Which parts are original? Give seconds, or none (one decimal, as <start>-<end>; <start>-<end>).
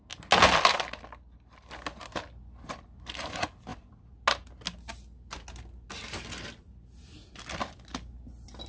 0.0-8.7